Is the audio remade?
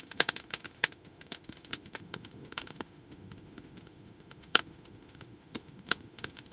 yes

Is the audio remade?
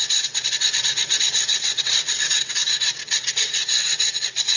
yes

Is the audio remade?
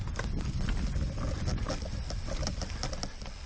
no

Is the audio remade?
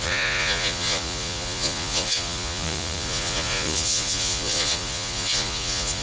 yes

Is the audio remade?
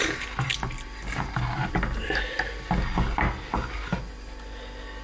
no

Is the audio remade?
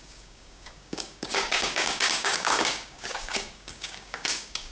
yes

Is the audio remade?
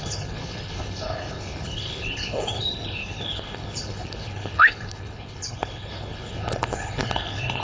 yes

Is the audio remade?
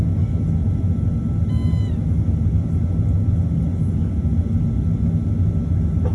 no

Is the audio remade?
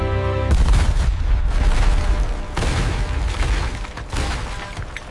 no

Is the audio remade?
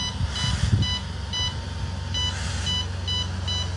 no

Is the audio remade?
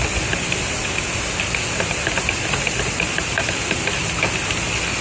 no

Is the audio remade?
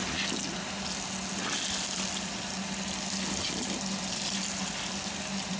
no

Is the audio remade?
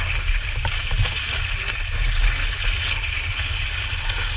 no